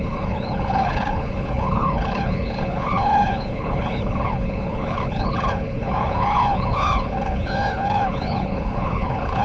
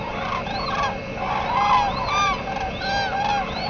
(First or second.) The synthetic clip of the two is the first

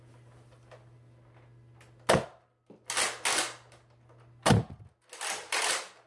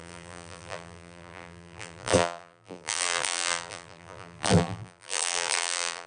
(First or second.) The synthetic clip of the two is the second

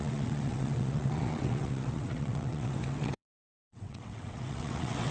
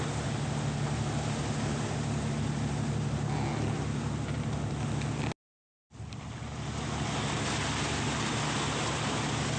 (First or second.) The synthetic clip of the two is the first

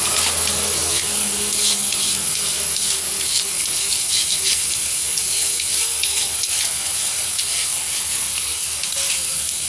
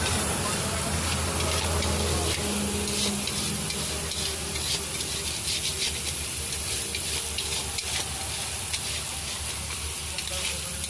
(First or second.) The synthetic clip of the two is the first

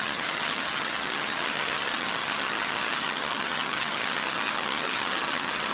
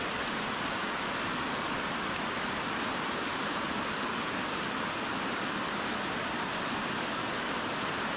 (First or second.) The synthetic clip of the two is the first